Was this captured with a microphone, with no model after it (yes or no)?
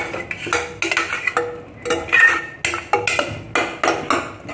yes